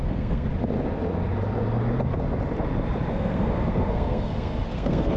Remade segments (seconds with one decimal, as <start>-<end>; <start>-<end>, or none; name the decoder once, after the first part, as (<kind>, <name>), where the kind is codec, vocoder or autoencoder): 0.0-0.5 (codec, SNAC); 3.1-5.2